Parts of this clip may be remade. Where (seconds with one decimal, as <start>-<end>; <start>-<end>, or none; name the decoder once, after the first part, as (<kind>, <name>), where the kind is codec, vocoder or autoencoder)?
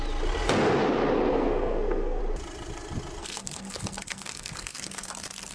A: 1.3-2.2 (codec, SNAC); 3.2-5.1